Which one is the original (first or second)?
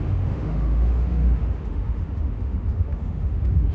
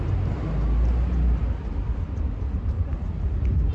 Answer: second